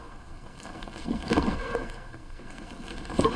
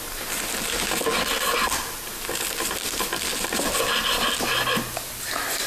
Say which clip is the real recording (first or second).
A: second